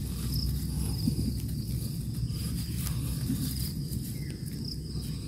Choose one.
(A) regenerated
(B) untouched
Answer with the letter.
B